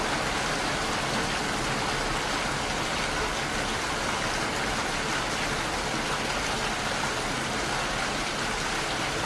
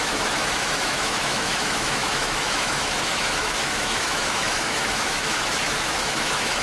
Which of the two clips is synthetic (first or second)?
second